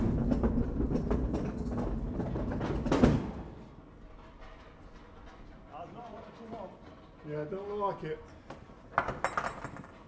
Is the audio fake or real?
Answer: real